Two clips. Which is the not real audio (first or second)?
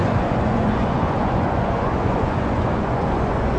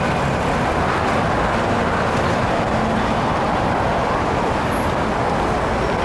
first